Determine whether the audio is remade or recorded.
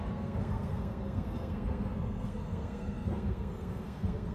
remade